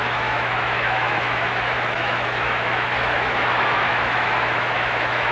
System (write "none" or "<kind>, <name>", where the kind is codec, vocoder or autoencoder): autoencoder, DAC-VAE